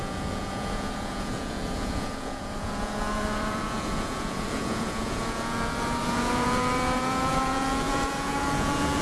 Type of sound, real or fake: fake